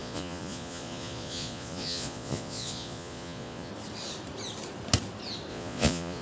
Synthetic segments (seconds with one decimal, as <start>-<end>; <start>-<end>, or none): 0.0-3.7; 5.5-6.2